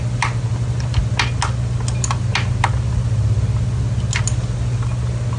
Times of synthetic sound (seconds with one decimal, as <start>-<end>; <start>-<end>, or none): none